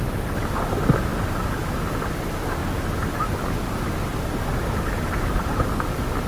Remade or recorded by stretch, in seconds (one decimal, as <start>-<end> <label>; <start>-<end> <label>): 0.0-6.3 recorded